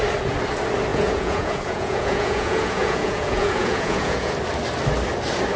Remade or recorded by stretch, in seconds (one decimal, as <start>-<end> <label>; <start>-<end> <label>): 0.0-0.9 recorded; 0.9-4.3 remade; 4.3-5.6 recorded